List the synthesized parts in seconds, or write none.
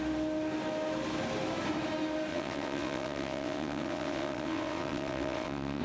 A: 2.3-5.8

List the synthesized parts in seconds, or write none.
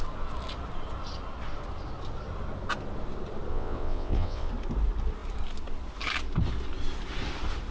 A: 3.5-4.5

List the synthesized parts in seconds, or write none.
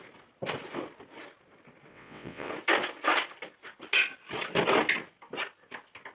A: 1.9-2.5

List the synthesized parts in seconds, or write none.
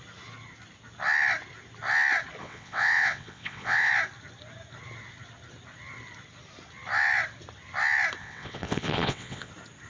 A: 2.4-3.9; 8.2-9.5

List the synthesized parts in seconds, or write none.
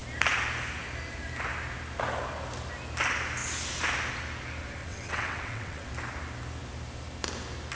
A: 4.8-5.9